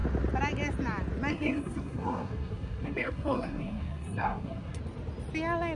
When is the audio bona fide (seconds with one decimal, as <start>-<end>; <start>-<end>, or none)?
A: 0.0-1.3; 4.8-5.8